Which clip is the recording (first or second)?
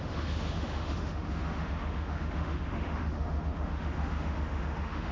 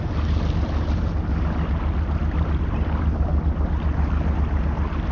second